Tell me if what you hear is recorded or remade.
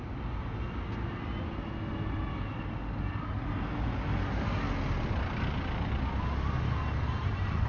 recorded